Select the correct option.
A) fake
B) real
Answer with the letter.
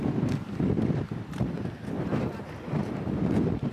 A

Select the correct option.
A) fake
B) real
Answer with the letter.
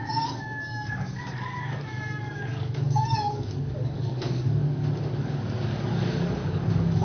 A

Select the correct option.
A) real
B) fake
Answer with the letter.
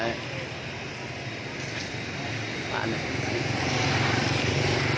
A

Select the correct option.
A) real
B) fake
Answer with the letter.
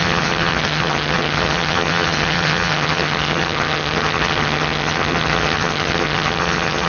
B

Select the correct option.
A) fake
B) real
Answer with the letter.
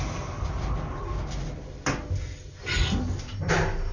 B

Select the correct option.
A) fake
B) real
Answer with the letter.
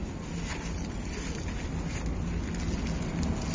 B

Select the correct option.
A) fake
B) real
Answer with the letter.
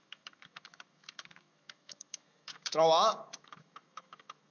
A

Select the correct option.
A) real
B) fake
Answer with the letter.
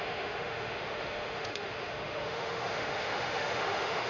B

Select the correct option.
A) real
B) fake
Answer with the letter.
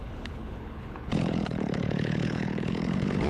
B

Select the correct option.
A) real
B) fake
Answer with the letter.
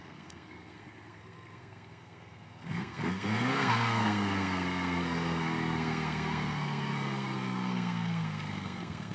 B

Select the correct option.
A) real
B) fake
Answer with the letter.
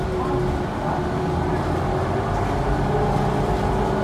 A